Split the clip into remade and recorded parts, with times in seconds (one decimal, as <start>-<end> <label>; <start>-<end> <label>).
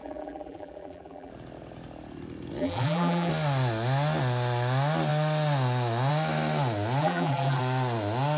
0.0-1.3 remade; 1.3-2.6 recorded; 2.6-3.3 remade; 3.3-7.0 recorded; 7.0-7.6 remade; 7.6-8.4 recorded